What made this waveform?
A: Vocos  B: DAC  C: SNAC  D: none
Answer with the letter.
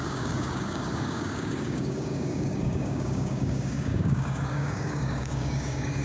B